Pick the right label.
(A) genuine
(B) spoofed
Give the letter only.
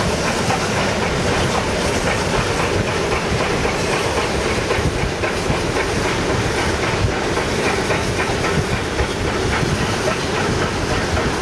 A